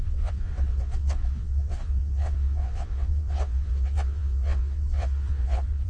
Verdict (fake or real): fake